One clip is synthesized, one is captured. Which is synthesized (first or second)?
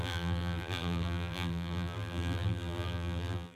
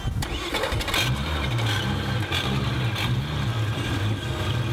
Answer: first